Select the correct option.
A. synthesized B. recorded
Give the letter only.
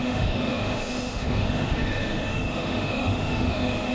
A